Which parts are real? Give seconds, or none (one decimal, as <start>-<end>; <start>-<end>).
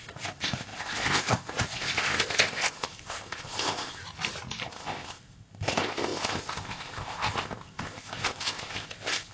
4.0-4.7